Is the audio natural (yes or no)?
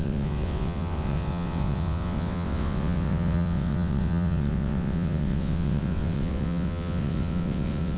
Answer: no